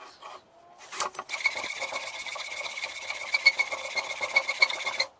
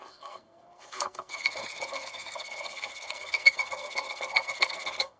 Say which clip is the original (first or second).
first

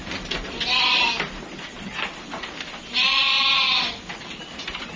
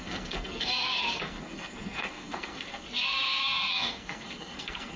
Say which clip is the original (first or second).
first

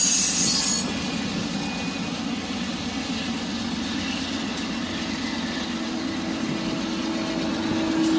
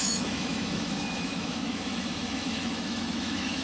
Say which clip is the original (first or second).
first